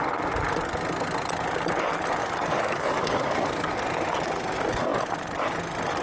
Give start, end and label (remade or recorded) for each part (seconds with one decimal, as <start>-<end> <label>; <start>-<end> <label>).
0.0-2.2 recorded; 2.2-3.7 remade; 3.7-6.0 recorded